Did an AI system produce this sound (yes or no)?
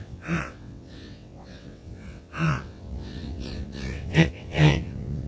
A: yes